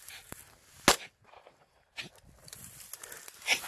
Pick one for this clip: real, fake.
real